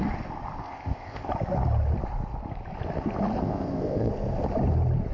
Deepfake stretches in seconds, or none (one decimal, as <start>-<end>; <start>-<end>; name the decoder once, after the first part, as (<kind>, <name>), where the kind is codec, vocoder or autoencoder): 0.6-1.3 (codec, ZipCodec); 3.4-4.1